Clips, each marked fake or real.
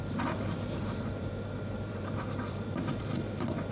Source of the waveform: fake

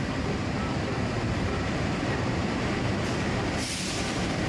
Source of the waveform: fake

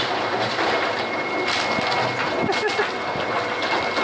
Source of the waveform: real